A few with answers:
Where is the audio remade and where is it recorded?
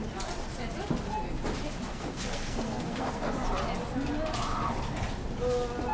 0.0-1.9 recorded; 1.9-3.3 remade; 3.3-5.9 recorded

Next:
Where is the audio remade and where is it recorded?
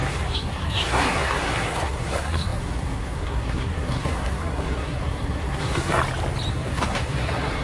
0.0-6.0 remade; 6.0-6.5 recorded; 6.5-7.6 remade